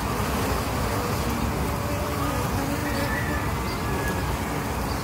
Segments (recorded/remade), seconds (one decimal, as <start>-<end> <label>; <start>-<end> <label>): 0.0-5.0 recorded